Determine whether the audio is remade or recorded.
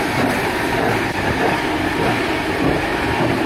recorded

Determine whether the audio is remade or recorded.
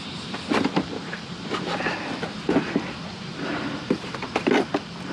remade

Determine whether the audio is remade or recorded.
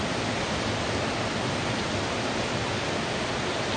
recorded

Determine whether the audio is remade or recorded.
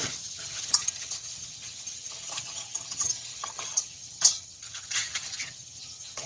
remade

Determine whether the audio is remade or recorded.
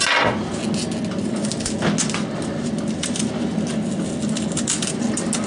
recorded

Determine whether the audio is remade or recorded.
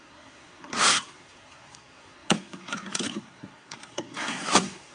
remade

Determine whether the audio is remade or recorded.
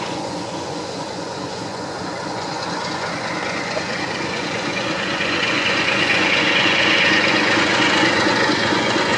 remade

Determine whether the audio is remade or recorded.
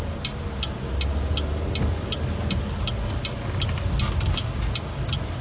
recorded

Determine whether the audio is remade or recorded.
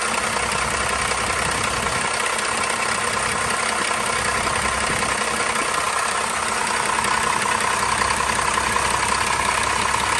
recorded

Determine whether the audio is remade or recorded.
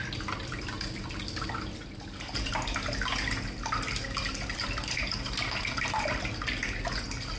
recorded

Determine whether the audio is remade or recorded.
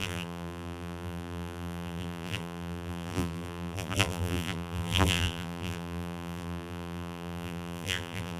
remade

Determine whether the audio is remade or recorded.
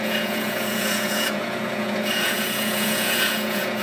remade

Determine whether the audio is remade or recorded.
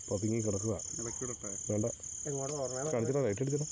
recorded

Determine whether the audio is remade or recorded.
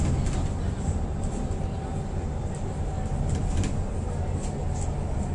recorded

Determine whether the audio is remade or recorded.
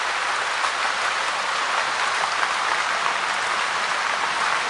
recorded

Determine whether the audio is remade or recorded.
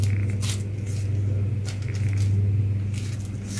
recorded